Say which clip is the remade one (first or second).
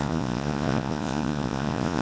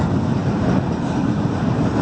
first